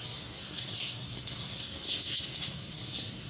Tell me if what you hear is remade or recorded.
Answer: remade